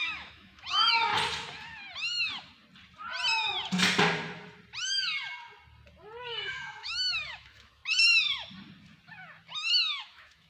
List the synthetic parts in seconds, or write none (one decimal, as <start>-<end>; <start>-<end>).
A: 0.0-1.1; 6.2-7.8; 10.0-10.5

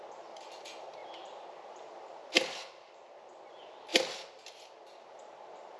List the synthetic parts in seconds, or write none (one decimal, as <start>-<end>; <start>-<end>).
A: none

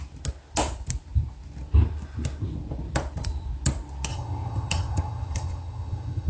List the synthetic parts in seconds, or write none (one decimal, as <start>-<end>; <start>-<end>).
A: 4.1-6.3

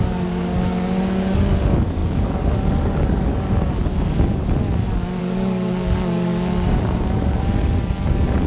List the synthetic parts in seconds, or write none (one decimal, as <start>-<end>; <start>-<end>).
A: 0.0-3.3; 5.2-6.3; 6.8-8.5

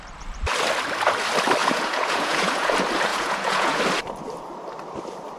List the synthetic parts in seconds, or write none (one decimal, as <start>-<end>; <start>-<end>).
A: 1.6-2.7; 3.1-3.8

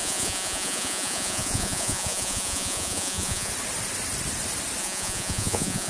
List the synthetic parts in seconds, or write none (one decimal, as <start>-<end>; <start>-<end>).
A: 0.0-3.5; 4.8-5.9

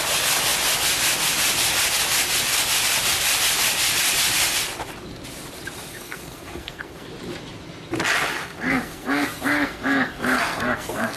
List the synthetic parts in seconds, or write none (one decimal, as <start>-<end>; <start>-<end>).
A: 5.9-7.1; 8.3-11.2